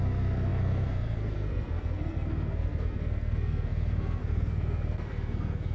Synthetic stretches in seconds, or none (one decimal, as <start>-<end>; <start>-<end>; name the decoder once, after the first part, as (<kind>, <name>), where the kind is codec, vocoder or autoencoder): 0.0-5.7 (codec, SNAC)